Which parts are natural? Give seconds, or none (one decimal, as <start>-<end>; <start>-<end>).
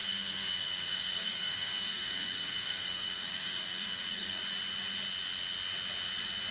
4.4-6.5